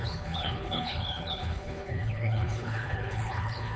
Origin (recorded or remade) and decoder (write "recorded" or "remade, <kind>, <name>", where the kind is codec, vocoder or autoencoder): remade, codec, HILCodec